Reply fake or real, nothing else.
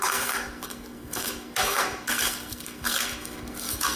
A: fake